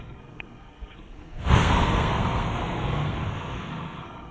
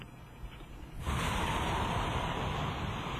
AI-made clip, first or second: first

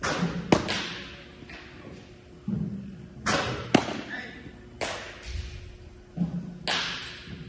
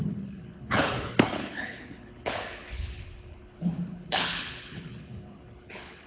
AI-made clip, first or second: second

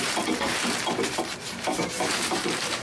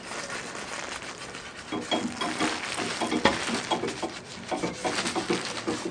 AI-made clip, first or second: first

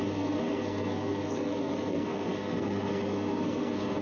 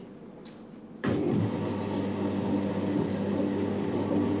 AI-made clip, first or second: first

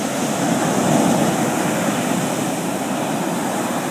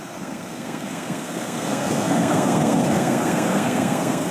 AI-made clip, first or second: second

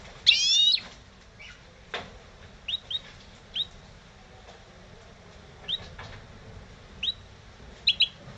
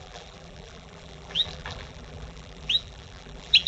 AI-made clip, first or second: second